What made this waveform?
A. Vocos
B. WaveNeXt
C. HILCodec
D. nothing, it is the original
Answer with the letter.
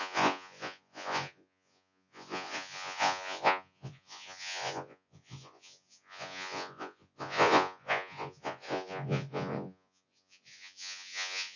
A